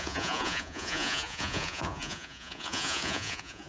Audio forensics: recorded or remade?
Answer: remade